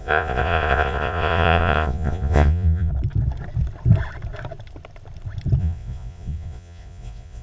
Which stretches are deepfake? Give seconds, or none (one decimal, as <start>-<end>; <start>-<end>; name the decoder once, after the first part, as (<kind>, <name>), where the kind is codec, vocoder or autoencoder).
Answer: 0.0-2.9 (vocoder, Vocos); 5.6-7.4